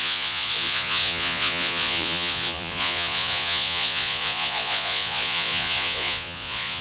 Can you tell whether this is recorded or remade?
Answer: remade